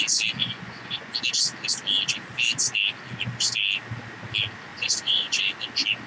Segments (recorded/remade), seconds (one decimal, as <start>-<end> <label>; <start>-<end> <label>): 0.0-0.4 recorded; 0.4-1.1 remade; 1.1-4.7 recorded; 4.7-5.4 remade; 5.4-6.1 recorded